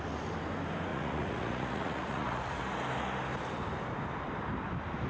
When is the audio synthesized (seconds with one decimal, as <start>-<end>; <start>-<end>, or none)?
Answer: 0.9-2.6